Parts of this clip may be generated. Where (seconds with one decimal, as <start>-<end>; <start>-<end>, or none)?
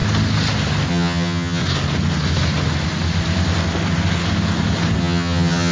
0.9-1.6; 5.0-5.7